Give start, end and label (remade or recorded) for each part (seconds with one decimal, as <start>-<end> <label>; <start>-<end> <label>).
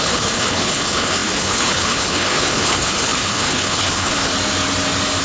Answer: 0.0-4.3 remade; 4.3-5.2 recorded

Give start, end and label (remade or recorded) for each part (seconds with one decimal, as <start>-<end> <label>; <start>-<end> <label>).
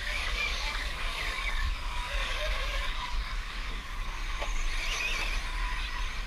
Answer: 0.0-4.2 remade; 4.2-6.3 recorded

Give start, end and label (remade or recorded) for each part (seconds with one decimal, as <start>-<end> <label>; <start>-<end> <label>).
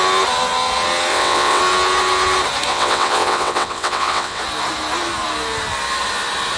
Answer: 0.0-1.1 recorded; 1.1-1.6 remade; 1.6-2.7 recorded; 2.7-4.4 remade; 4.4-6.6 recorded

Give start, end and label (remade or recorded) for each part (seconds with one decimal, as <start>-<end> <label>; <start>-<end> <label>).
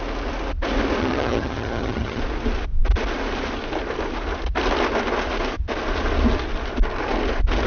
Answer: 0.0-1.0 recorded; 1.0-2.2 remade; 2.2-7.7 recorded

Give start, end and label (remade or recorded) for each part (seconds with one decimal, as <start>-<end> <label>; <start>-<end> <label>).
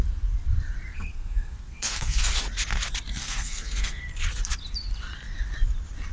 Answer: 0.0-0.9 recorded; 0.9-2.3 remade; 2.3-3.2 recorded; 3.2-4.0 remade; 4.0-6.1 recorded